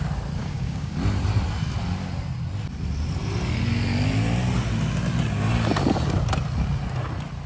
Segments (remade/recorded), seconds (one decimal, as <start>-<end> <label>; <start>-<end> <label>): 0.0-0.4 recorded; 0.4-0.9 remade; 0.9-7.5 recorded